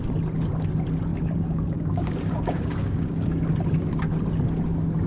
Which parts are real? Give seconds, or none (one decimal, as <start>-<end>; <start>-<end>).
0.0-1.1; 3.5-5.1